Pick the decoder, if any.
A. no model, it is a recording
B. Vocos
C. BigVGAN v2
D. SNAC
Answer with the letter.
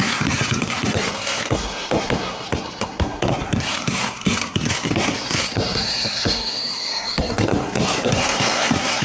D